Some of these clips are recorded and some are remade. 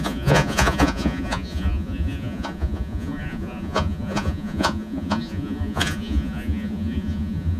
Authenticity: remade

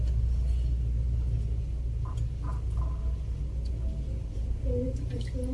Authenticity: recorded